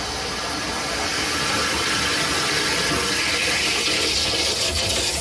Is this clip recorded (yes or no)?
yes